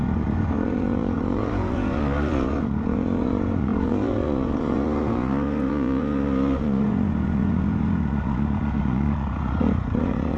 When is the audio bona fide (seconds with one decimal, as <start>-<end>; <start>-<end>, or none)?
none